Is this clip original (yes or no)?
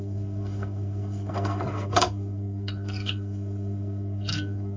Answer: no